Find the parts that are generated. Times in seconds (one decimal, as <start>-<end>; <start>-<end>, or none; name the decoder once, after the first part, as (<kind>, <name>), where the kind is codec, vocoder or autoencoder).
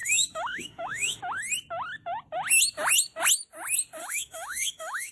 0.0-1.2 (autoencoder, DAC-VAE); 4.0-5.1